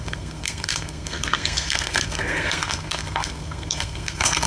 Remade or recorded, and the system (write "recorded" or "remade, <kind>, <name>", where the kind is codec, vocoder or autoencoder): remade, codec, SNAC